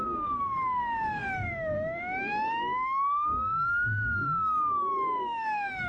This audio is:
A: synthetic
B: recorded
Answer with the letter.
A